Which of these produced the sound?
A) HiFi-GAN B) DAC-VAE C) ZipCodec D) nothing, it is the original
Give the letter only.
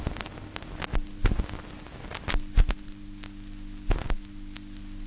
D